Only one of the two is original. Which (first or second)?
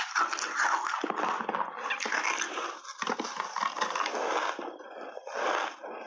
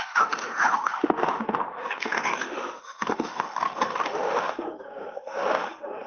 first